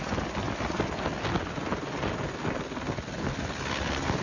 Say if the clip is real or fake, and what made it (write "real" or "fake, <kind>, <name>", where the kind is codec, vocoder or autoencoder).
real